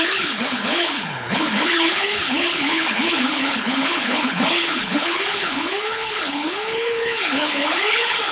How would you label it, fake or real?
fake